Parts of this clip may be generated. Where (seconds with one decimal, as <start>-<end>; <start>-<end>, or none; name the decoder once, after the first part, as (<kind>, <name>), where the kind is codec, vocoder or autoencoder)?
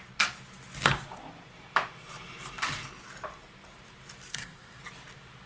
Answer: 4.3-4.8 (codec, SNAC)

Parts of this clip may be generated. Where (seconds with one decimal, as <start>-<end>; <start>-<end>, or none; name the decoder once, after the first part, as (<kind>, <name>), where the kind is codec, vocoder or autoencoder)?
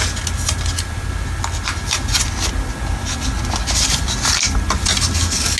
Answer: none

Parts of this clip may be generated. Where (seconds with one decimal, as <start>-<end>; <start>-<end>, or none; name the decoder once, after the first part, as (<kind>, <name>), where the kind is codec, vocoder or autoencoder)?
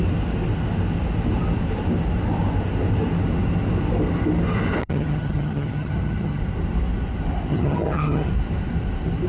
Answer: 4.8-6.4 (vocoder, HiFi-GAN); 7.5-8.3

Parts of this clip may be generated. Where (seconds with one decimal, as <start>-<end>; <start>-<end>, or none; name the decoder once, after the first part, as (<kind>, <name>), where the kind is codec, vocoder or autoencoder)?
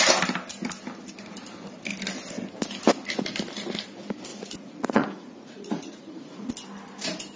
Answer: 4.3-6.5 (vocoder, Vocos)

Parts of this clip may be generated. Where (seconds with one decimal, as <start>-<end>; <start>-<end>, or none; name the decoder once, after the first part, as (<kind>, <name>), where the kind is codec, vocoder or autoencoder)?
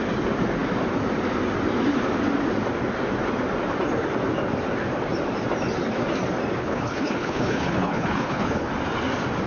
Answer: 6.6-8.7 (codec, HILCodec)